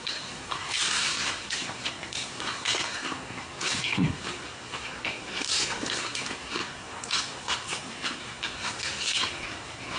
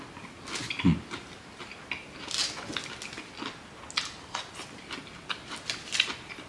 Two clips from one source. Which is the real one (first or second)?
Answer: second